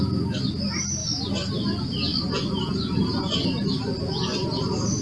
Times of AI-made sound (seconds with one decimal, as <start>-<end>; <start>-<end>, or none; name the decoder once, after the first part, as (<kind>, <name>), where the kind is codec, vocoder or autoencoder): none